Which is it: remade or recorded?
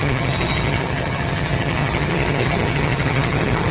remade